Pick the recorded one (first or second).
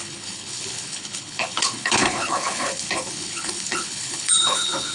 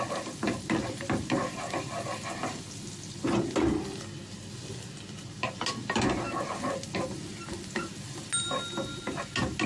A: second